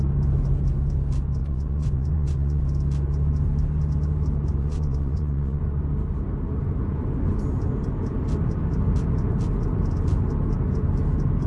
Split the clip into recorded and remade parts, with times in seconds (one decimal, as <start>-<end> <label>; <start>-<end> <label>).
0.0-1.4 recorded; 1.4-2.6 remade; 2.6-4.6 recorded; 4.6-5.6 remade; 5.6-11.5 recorded